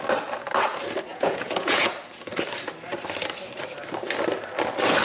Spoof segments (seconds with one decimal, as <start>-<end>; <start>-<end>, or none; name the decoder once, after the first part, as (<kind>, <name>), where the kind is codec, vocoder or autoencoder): 1.1-1.9 (vocoder, Vocos)